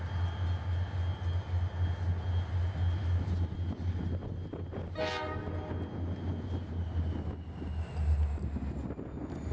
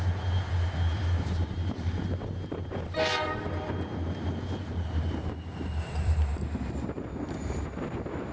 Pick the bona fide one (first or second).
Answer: first